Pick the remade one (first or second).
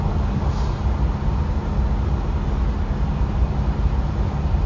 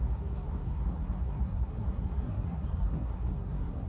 second